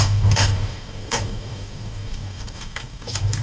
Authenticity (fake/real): fake